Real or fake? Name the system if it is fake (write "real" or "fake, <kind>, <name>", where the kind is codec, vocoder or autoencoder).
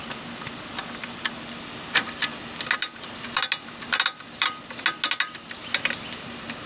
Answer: real